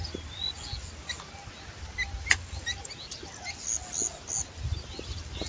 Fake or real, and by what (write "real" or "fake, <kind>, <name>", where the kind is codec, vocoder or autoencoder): real